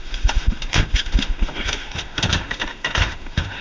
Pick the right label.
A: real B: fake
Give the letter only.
B